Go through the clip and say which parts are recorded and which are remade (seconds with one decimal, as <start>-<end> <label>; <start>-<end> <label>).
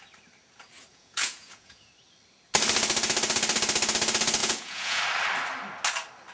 0.0-0.9 recorded; 0.9-1.9 remade; 1.9-4.4 recorded; 4.4-5.0 remade; 5.0-6.3 recorded